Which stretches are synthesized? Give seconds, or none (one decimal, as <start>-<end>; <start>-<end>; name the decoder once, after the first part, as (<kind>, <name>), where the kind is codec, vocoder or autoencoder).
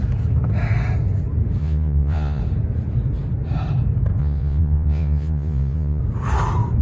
1.6-2.4 (vocoder, Vocos); 4.2-6.0